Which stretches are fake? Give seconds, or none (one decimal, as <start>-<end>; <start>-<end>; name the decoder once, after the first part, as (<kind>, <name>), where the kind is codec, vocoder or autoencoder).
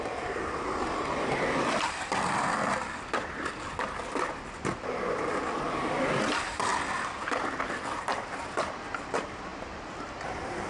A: none